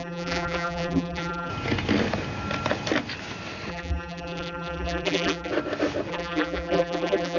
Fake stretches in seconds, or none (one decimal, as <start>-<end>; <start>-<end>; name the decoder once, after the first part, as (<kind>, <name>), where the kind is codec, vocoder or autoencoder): 0.0-1.5 (vocoder, BigVGAN v2); 3.7-5.5; 6.1-7.4